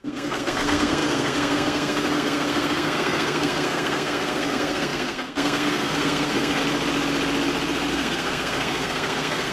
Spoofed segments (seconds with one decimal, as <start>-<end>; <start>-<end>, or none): 0.0-6.6; 7.9-9.5